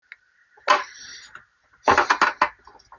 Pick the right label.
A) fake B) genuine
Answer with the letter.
B